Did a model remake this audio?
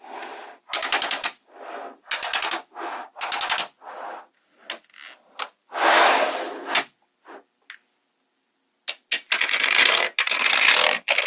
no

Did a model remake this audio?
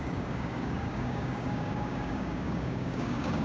yes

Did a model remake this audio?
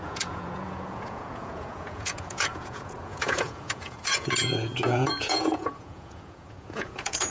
yes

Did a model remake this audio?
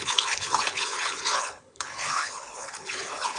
yes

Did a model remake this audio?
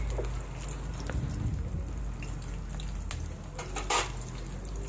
no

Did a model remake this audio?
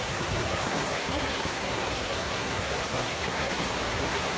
yes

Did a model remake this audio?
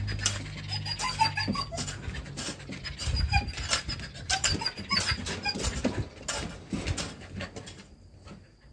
no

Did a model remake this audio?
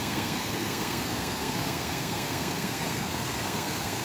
yes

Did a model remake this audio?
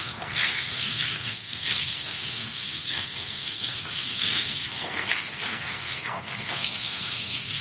yes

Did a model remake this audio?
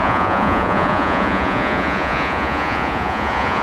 yes